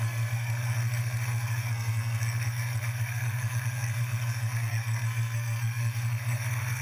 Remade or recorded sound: remade